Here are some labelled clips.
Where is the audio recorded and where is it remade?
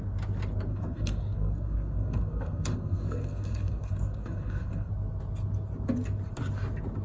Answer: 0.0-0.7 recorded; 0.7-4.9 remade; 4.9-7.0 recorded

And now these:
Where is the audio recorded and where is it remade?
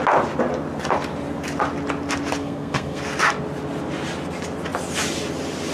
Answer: 0.0-2.4 recorded; 2.4-3.0 remade; 3.0-5.7 recorded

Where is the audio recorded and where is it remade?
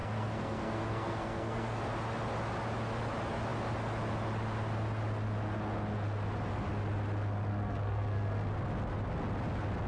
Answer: 0.0-1.8 remade; 1.8-7.5 recorded; 7.5-8.5 remade; 8.5-9.9 recorded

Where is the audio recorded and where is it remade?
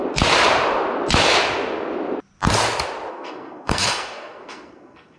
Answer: 0.0-3.1 recorded; 3.1-5.2 remade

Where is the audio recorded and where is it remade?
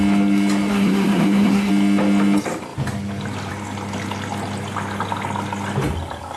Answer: 0.0-0.7 recorded; 0.7-1.7 remade; 1.7-6.4 recorded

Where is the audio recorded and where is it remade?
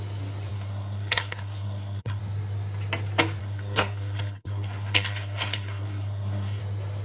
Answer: 0.0-0.5 recorded; 0.5-2.2 remade; 2.2-3.4 recorded; 3.4-6.6 remade; 6.6-7.0 recorded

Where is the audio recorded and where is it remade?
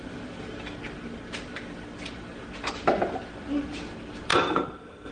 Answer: 0.0-4.3 recorded; 4.3-5.1 remade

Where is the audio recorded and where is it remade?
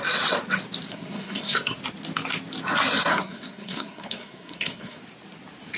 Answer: 0.0-0.9 recorded; 0.9-1.8 remade; 1.8-3.1 recorded; 3.1-5.0 remade; 5.0-5.8 recorded